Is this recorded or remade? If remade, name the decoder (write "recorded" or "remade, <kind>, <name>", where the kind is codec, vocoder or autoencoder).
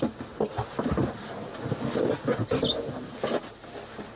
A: recorded